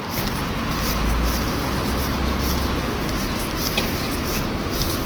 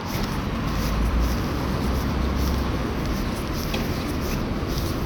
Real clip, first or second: first